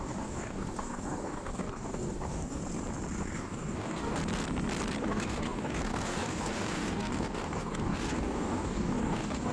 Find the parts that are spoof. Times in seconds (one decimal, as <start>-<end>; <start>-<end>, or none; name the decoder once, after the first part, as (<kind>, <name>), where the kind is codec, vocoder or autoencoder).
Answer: 0.0-2.6 (codec, DAC); 3.4-4.2; 5.0-9.5